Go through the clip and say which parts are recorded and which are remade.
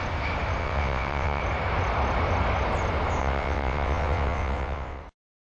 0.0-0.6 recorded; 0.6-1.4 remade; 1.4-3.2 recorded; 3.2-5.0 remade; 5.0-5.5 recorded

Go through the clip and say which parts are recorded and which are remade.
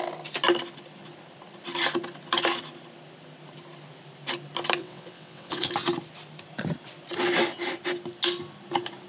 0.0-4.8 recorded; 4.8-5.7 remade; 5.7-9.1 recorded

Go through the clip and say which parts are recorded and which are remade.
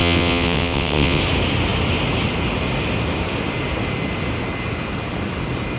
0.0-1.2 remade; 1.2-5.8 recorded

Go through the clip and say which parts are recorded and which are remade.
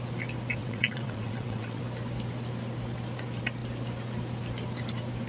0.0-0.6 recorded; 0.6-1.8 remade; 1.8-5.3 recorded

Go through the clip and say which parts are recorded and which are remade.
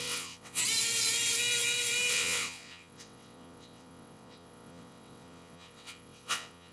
0.0-0.6 remade; 0.6-2.1 recorded; 2.1-6.7 remade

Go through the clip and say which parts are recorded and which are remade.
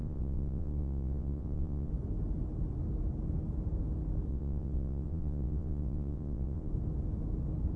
0.0-1.9 remade; 1.9-4.3 recorded; 4.3-6.7 remade; 6.7-7.8 recorded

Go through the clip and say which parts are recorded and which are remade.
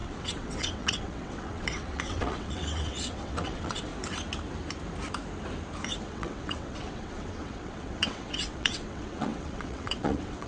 0.0-3.9 remade; 3.9-6.0 recorded; 6.0-10.5 remade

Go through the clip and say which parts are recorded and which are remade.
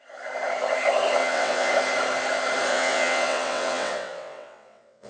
0.0-1.2 recorded; 1.2-1.7 remade; 1.7-2.7 recorded; 2.7-5.1 remade